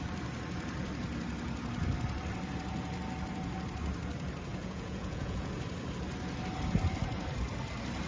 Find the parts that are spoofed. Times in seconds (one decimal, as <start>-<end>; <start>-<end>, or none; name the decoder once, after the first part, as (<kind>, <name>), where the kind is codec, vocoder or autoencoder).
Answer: 4.5-5.5 (vocoder, Vocos)